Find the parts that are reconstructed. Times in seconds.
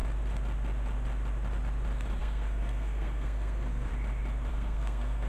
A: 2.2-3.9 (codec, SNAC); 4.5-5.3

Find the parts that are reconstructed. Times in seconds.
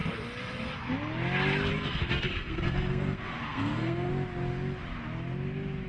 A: 1.7-4.1 (codec, SNAC)